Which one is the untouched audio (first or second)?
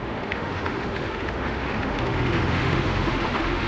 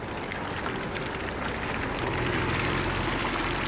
second